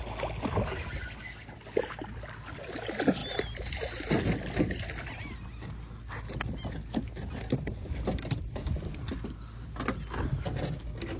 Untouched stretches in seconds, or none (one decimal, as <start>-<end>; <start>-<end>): 0.0-11.2